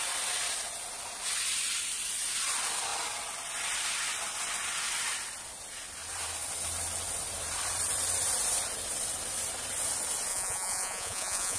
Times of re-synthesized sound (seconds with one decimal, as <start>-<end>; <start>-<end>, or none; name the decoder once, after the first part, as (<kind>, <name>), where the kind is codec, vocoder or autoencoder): 10.3-11.6 (vocoder, Vocos)